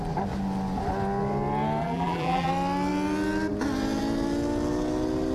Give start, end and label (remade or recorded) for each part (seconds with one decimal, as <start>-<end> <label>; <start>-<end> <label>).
0.0-1.8 recorded; 1.8-2.5 remade; 2.5-5.3 recorded